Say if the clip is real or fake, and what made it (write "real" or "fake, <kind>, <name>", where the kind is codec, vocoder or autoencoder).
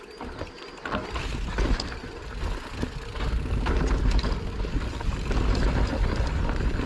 real